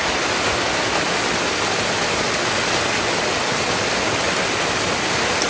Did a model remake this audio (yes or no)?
no